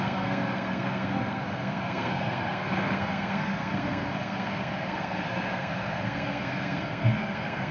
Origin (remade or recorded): remade